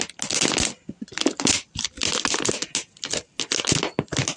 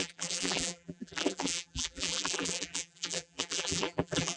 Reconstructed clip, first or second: second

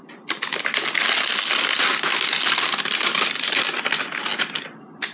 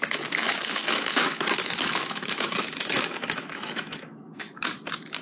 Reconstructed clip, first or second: second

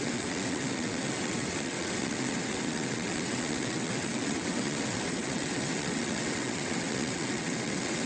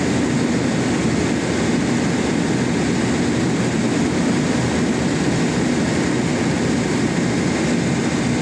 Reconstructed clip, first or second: first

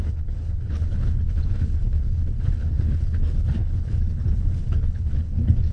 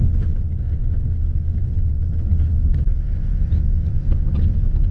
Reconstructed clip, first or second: first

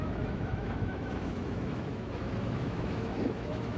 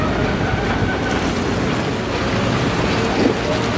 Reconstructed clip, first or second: first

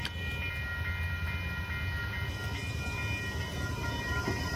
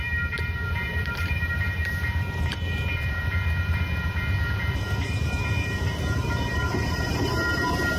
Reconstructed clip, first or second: second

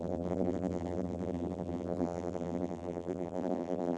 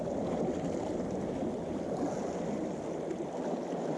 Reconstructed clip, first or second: first